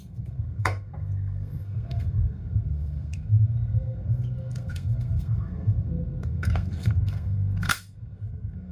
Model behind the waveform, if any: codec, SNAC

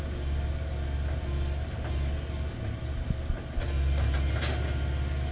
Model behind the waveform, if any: none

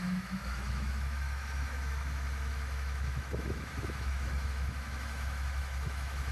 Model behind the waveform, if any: autoencoder, DAC-VAE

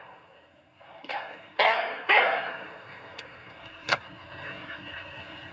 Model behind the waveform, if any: codec, SNAC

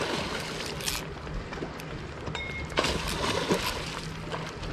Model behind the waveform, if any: none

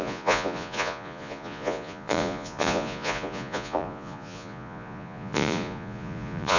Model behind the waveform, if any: vocoder, Vocos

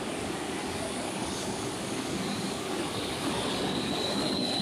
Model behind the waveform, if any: codec, DAC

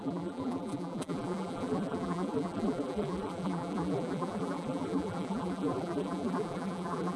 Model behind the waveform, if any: vocoder, BigVGAN v2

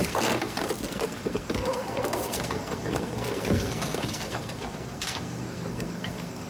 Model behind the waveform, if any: codec, SNAC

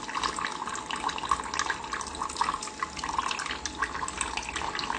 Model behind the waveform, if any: none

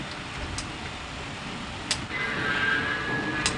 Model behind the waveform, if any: none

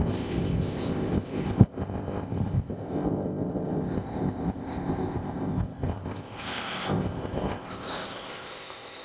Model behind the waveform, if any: codec, ZipCodec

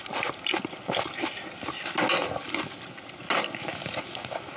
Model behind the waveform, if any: none